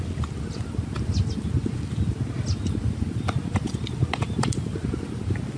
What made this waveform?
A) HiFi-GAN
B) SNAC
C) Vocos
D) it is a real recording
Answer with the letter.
D